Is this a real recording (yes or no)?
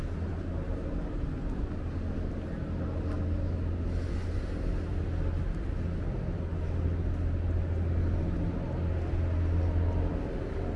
yes